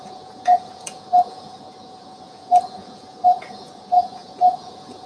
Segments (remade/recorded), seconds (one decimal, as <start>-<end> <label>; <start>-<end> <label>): 0.0-5.1 remade